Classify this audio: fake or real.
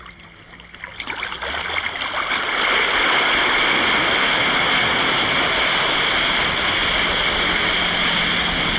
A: real